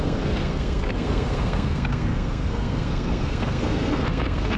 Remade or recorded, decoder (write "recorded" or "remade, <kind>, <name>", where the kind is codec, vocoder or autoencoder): remade, codec, SNAC